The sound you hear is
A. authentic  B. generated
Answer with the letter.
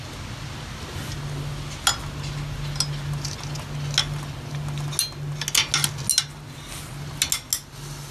A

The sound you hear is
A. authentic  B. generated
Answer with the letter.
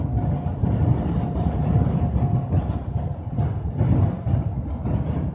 A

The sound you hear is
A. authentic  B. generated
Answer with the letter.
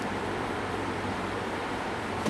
B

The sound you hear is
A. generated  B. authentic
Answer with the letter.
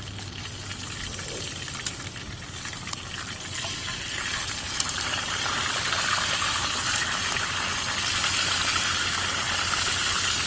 B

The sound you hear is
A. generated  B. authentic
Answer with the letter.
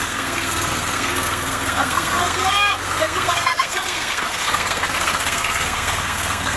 A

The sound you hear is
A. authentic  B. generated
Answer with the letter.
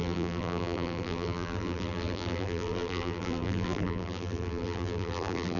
B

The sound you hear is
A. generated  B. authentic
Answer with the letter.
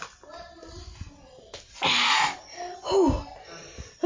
B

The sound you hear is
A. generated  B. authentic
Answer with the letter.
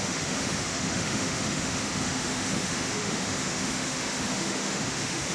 A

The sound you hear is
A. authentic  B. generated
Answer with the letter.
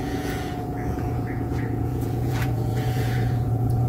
B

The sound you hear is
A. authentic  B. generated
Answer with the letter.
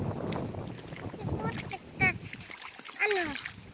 A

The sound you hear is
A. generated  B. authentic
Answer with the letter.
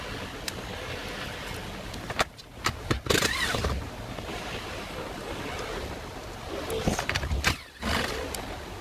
B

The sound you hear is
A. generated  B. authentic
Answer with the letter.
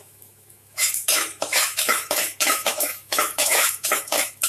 A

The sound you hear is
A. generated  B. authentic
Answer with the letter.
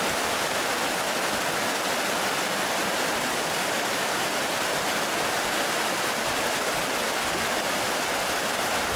B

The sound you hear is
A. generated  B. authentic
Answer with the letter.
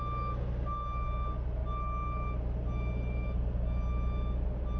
B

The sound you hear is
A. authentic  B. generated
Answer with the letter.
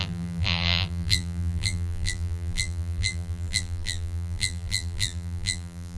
B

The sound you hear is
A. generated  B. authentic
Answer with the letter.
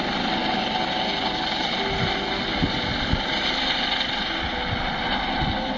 B